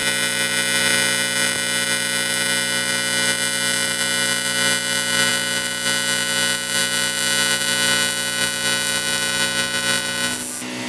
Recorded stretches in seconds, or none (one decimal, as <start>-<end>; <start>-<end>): 0.0-10.9